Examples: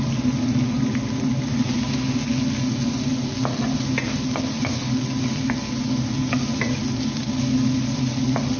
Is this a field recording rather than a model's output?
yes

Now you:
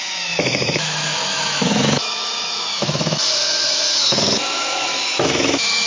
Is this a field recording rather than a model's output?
no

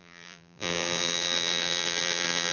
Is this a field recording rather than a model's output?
no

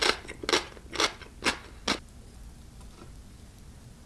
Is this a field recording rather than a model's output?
yes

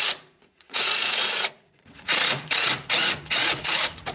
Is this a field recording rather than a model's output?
no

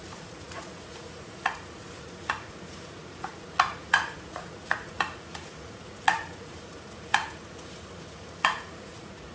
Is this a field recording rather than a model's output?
no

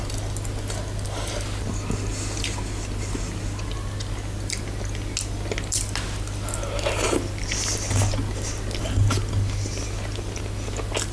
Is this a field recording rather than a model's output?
yes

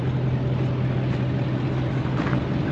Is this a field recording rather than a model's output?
yes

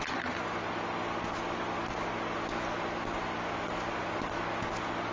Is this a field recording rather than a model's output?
yes